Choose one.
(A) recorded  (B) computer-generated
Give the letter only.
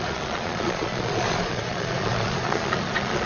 B